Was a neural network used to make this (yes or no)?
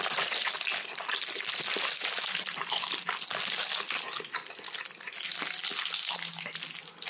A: no